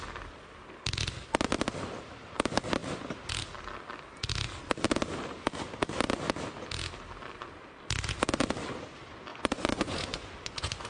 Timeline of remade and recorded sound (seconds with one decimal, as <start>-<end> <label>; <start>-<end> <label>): 0.0-9.3 recorded; 9.3-10.9 remade